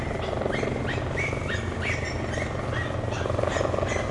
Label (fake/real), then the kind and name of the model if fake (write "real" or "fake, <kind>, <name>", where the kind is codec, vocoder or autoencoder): real